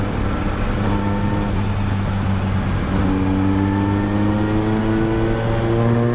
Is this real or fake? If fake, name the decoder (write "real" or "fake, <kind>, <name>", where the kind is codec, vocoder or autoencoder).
real